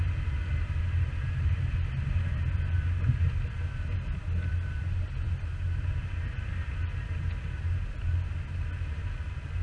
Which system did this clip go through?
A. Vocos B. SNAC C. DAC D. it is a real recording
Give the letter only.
D